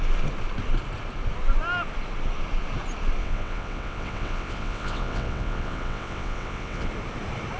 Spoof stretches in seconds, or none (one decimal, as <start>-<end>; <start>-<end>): 3.2-6.9